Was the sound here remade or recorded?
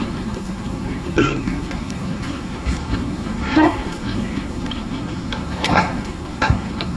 remade